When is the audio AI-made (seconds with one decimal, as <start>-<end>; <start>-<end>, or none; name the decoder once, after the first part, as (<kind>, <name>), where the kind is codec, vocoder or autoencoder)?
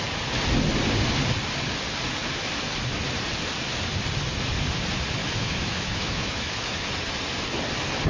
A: 5.2-6.8 (autoencoder, DAC-VAE)